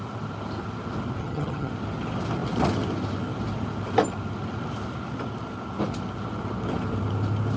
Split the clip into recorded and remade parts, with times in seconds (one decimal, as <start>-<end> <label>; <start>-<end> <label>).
0.0-1.2 recorded; 1.2-1.7 remade; 1.7-7.6 recorded